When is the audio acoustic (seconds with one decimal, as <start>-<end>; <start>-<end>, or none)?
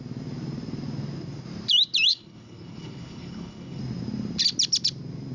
0.0-2.1; 3.8-5.3